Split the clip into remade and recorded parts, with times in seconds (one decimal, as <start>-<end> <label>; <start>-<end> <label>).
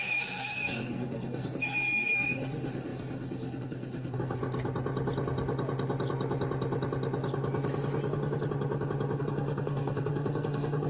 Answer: 0.0-4.4 remade; 4.4-9.2 recorded; 9.2-10.9 remade